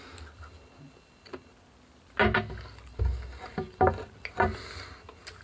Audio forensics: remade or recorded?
recorded